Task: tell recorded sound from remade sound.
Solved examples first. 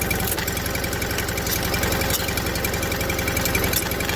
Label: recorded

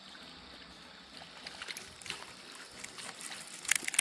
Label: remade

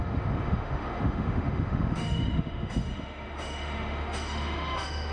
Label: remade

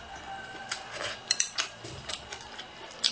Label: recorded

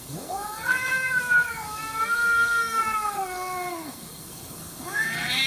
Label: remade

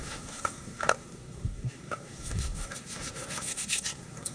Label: remade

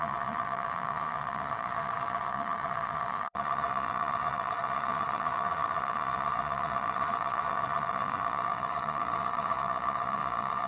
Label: remade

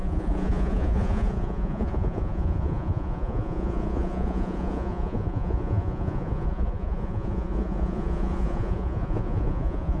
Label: remade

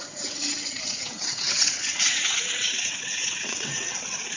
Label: remade